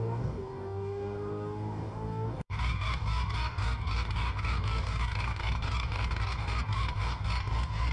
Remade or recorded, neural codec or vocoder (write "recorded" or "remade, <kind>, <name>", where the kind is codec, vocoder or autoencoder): remade, codec, DAC